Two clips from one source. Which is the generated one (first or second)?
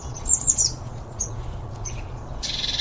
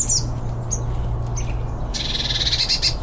first